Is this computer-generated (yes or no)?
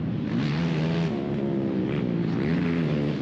no